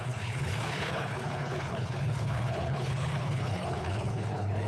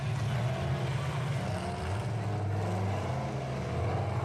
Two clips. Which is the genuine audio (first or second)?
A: second